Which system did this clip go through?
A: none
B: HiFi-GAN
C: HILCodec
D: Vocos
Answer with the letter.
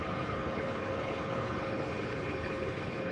C